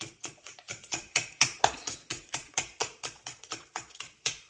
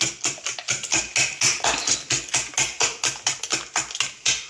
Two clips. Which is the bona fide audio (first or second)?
second